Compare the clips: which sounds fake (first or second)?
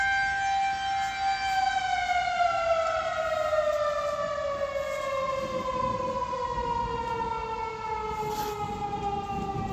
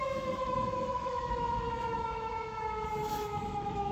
second